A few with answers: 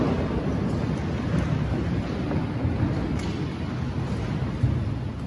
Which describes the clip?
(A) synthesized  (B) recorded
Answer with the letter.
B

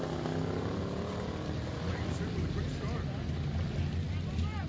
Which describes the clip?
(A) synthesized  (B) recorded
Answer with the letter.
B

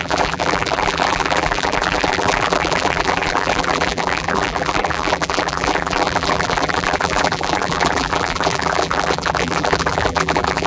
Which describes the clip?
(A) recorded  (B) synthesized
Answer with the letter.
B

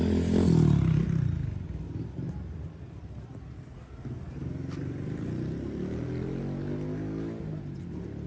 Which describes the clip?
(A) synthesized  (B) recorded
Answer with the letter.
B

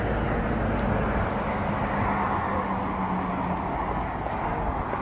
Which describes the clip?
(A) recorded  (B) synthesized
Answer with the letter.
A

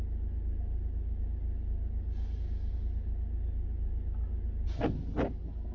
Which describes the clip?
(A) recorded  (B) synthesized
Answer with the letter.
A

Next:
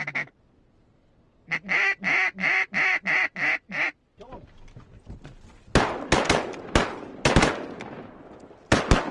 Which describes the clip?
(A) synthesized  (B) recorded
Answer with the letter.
B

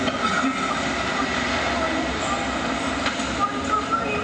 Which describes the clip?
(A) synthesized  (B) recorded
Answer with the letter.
B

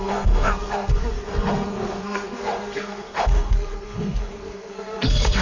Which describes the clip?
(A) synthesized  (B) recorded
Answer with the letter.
A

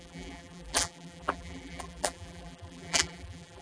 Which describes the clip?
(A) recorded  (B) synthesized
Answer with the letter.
B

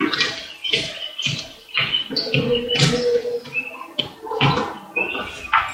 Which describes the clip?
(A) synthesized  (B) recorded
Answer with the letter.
B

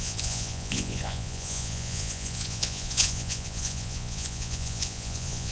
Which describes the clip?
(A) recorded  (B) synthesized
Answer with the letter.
B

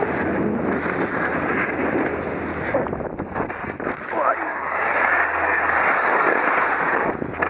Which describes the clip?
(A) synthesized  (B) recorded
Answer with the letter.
B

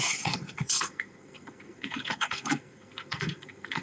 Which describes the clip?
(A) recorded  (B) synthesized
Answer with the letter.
B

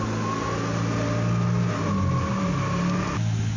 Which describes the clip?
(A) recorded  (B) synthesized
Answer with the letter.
A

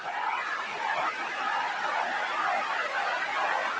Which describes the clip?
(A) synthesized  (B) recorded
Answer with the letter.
B